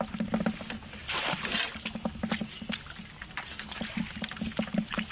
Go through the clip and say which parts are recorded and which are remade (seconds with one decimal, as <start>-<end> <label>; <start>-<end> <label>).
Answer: 0.0-5.1 recorded